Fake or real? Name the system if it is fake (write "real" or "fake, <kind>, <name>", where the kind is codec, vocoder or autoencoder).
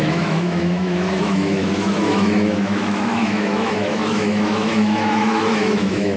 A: fake, autoencoder, DAC-VAE